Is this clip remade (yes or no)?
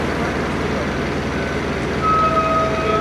no